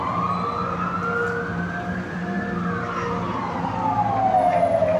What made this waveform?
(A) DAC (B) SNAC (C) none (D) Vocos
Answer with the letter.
C